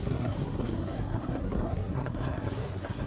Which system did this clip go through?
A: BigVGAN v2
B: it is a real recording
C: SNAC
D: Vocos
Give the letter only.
C